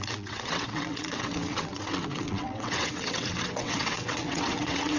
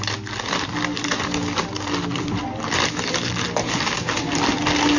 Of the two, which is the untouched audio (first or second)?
second